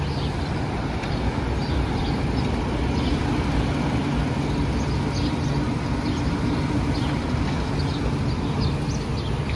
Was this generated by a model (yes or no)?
no